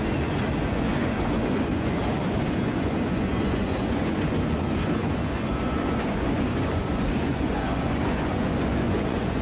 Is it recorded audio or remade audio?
remade